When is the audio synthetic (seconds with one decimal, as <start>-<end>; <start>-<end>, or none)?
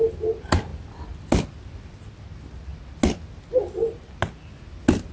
none